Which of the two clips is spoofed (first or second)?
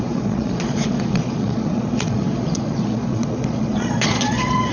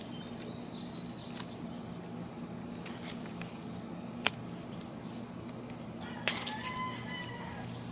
first